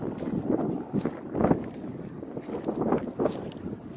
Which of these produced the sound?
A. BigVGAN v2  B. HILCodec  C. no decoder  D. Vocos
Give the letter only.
C